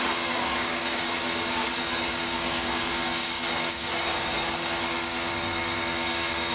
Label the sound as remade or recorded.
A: remade